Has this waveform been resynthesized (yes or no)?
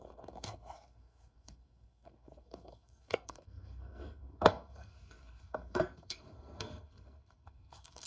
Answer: yes